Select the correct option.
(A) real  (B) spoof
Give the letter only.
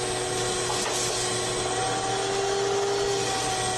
A